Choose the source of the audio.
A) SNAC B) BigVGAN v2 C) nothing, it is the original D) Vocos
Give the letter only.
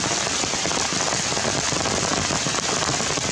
B